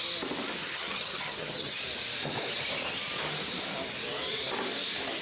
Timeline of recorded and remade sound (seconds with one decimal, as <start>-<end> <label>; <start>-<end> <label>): 0.0-0.6 recorded; 0.6-1.8 remade; 1.8-5.2 recorded